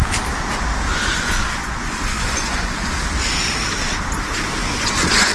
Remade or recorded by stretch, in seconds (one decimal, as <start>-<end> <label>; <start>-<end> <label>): 0.0-0.9 recorded; 0.9-2.9 remade; 2.9-4.6 recorded; 4.6-5.3 remade

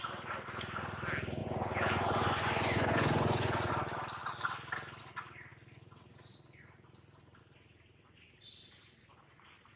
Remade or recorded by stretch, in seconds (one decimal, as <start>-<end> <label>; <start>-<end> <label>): 0.0-1.4 recorded; 1.4-3.7 remade; 3.7-9.8 recorded

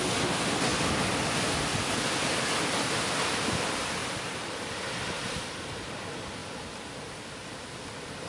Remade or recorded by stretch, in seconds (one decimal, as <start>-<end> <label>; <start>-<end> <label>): 0.0-4.0 recorded; 4.0-5.7 remade; 5.7-8.3 recorded